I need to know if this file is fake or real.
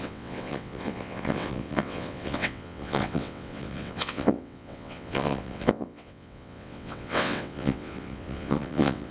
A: fake